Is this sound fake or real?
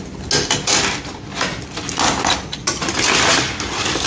real